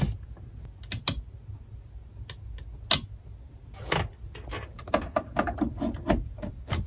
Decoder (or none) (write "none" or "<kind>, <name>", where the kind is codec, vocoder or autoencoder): none